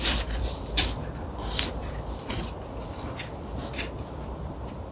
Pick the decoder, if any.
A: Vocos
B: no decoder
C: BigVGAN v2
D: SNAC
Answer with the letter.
C